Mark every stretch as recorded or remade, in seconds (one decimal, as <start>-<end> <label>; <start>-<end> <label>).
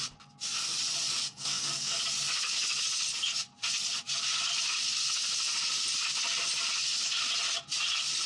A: 0.0-1.2 recorded; 1.2-2.0 remade; 2.0-8.3 recorded